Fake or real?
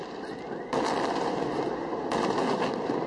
real